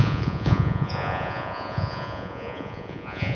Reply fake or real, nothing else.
fake